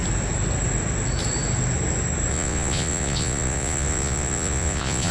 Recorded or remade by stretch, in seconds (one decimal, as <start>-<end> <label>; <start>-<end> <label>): 0.0-2.3 recorded; 2.3-5.1 remade